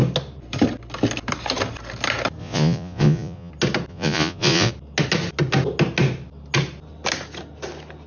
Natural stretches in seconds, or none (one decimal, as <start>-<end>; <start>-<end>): 0.0-2.4; 3.5-3.9; 4.7-8.1